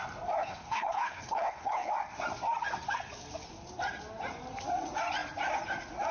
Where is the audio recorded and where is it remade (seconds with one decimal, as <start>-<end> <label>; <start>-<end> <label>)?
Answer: 0.0-0.4 recorded; 0.4-1.9 remade; 1.9-6.1 recorded